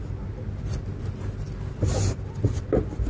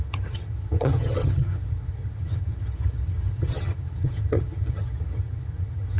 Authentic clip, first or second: first